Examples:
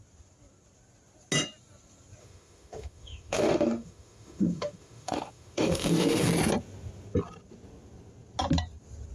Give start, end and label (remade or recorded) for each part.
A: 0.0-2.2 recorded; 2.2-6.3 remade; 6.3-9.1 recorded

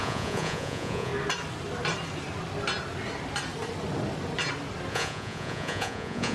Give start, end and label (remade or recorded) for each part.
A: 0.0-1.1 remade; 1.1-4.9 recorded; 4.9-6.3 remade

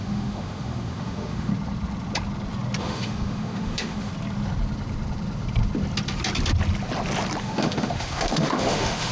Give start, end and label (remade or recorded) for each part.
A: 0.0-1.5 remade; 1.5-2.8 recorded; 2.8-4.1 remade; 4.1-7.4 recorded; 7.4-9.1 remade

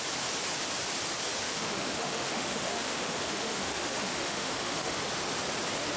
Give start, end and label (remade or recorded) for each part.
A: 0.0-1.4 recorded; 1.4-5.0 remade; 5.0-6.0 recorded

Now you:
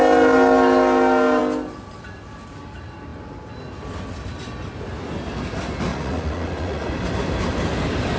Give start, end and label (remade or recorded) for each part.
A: 0.0-5.9 recorded; 5.9-6.9 remade; 6.9-8.2 recorded

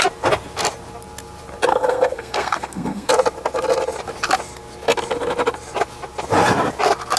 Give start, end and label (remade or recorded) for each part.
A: 0.0-1.7 recorded; 1.7-3.1 remade; 3.1-7.2 recorded